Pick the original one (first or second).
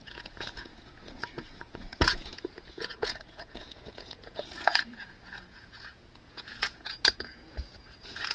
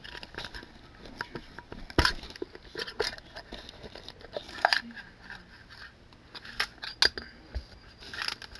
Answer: second